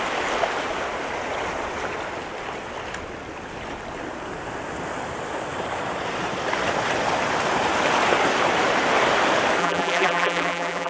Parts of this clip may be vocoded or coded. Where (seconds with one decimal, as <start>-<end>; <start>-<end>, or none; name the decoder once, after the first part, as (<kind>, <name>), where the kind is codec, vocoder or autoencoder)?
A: 9.6-10.9 (vocoder, BigVGAN v2)